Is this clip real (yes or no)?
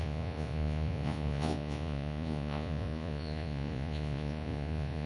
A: no